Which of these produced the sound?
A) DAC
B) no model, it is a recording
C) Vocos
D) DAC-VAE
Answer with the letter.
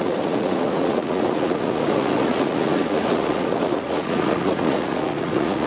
C